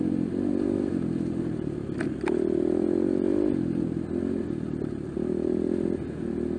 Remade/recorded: recorded